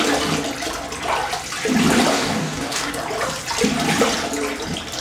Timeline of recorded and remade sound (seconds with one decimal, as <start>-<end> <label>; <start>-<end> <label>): 0.0-2.1 recorded; 2.1-2.9 remade; 2.9-5.0 recorded